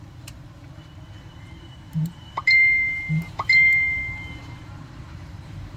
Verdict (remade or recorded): remade